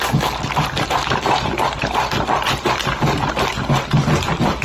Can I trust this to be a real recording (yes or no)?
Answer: yes